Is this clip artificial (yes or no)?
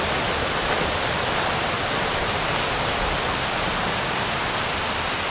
no